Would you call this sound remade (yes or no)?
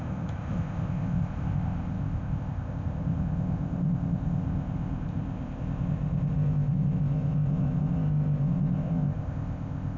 yes